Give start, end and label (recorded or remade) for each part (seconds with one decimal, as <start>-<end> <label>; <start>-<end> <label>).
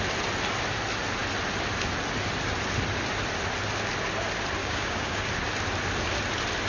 0.0-4.6 recorded; 4.6-5.3 remade; 5.3-6.7 recorded